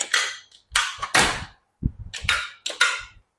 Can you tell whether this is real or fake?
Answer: real